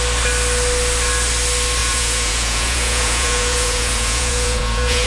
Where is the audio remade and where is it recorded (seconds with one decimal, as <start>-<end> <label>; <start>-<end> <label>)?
0.0-1.8 recorded; 1.8-5.1 remade